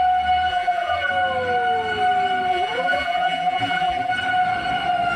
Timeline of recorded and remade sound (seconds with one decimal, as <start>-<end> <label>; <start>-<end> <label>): 0.0-0.5 recorded; 0.5-1.1 remade; 1.1-2.5 recorded; 2.5-4.1 remade; 4.1-5.2 recorded